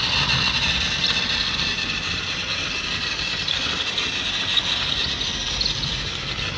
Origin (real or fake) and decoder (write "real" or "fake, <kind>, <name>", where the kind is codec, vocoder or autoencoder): real